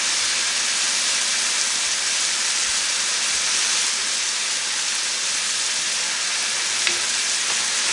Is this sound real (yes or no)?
yes